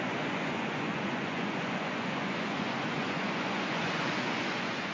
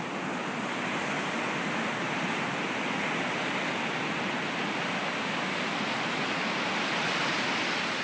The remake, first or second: first